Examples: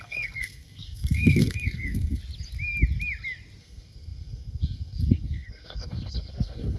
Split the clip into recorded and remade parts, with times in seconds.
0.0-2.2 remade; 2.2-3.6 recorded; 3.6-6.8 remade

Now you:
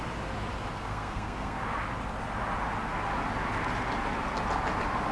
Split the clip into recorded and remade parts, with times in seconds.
0.0-0.7 recorded; 0.7-1.6 remade; 1.6-5.1 recorded